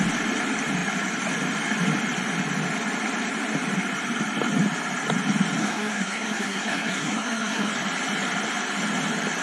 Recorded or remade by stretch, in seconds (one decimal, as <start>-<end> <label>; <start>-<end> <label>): 0.0-5.6 recorded; 5.6-7.7 remade; 7.7-9.4 recorded